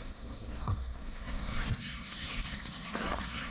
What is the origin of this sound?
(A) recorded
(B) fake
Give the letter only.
B